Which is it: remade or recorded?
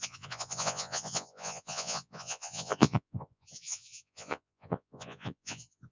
remade